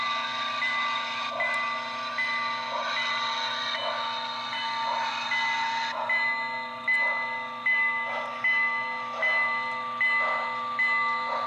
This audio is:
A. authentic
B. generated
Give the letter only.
A